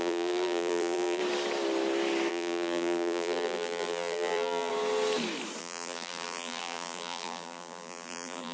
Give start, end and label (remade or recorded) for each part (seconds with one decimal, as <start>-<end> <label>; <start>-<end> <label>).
0.0-1.2 remade; 1.2-2.3 recorded; 2.3-4.7 remade; 4.7-5.6 recorded; 5.6-8.5 remade